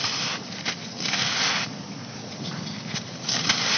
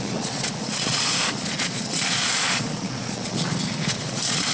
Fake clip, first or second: second